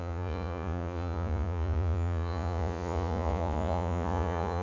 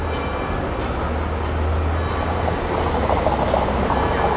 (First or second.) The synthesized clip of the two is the first